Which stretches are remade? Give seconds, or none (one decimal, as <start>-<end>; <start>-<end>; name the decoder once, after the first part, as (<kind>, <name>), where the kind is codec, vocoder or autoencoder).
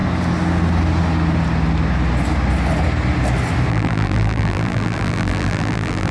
3.7-6.1 (vocoder, BigVGAN v2)